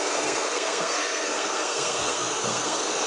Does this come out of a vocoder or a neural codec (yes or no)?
yes